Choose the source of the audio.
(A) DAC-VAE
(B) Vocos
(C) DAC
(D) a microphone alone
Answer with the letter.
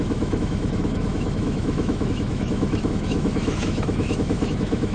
A